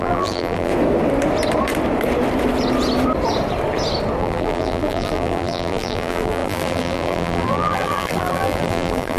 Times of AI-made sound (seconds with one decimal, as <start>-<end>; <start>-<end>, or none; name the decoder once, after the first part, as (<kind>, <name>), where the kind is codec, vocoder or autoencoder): 0.0-0.7 (vocoder, BigVGAN v2); 4.2-9.2